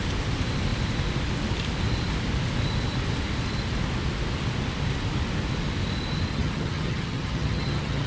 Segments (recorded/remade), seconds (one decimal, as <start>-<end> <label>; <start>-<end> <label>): 0.0-6.3 recorded; 6.3-8.1 remade